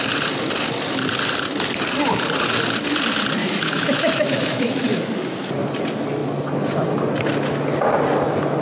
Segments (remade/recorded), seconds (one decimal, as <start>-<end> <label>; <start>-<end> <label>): 0.0-3.4 recorded; 3.4-5.0 remade; 5.0-8.6 recorded